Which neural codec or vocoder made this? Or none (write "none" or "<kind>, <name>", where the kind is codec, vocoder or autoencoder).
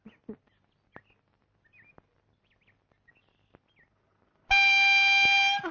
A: none